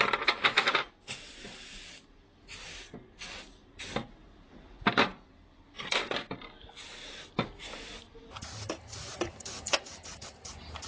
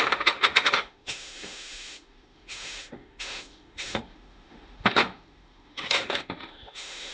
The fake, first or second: second